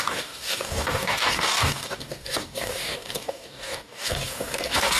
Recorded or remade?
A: remade